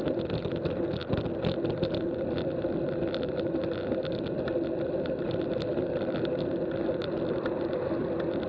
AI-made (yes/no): no